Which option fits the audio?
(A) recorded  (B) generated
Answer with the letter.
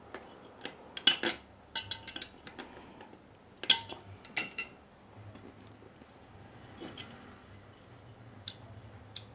A